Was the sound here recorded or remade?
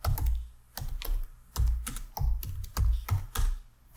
recorded